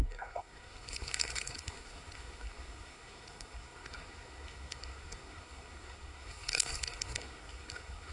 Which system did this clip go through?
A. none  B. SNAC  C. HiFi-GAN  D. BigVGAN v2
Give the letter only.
B